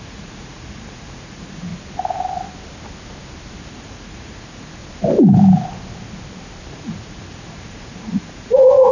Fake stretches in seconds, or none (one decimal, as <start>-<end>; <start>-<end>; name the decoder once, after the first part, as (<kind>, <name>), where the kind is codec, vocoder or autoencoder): 0.0-1.7 (vocoder, Vocos); 3.6-4.8; 6.7-8.9